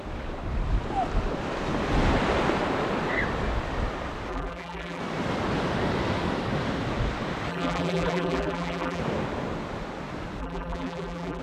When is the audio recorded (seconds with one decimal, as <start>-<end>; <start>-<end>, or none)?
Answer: 0.0-4.3; 5.0-7.5; 9.0-10.4

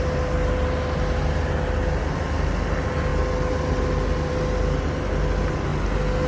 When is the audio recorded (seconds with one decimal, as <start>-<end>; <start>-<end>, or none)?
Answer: 0.0-6.3

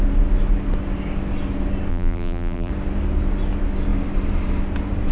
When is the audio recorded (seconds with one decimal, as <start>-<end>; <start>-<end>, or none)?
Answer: 0.0-1.9; 2.7-5.1

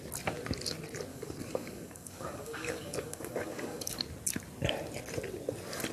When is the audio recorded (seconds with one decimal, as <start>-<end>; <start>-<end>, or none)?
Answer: 0.0-1.1; 4.0-5.9

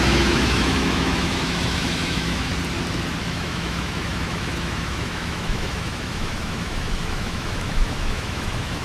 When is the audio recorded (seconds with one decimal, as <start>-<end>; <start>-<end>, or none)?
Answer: 2.5-3.2

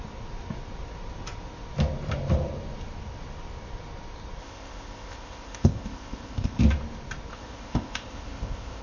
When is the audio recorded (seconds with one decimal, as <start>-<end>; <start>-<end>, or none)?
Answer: 0.0-4.4; 6.6-7.3